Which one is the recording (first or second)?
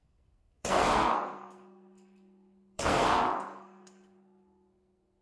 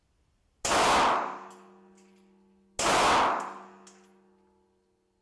second